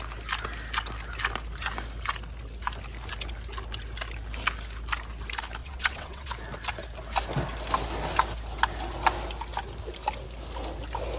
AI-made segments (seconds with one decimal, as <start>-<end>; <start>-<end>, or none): 5.6-6.3